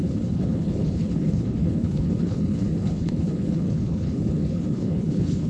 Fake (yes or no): yes